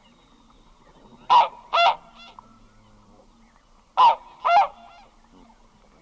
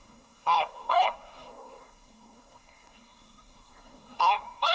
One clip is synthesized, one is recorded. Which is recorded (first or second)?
first